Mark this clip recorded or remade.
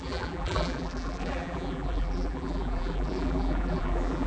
remade